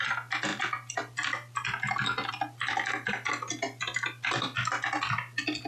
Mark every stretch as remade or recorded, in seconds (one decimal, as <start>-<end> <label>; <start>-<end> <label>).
0.0-5.7 recorded